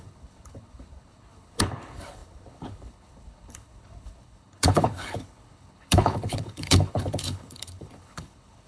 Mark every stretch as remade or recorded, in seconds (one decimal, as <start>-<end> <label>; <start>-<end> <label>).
0.0-8.7 remade